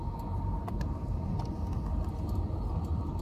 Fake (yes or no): no